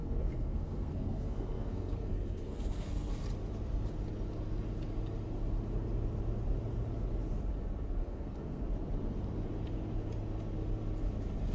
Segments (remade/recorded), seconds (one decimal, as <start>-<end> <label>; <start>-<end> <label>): 0.0-3.1 remade; 3.1-8.0 recorded; 8.0-8.6 remade; 8.6-11.5 recorded